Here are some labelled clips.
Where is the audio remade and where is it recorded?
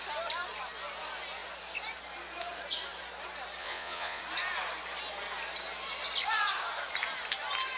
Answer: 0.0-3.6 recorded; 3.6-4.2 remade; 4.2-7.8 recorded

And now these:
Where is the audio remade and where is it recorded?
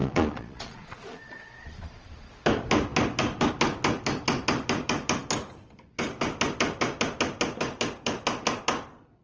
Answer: 0.0-2.3 remade; 2.3-9.2 recorded